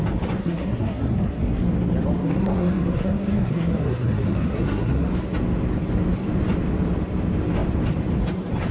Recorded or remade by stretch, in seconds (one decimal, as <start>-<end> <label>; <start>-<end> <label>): 0.0-0.4 recorded; 0.4-1.6 remade; 1.6-2.2 recorded; 2.2-5.1 remade; 5.1-8.7 recorded